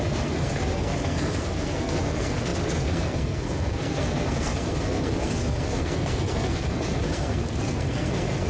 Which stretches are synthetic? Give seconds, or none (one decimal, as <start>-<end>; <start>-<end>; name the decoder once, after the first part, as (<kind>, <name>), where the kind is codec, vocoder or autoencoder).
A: 0.0-8.5 (codec, SNAC)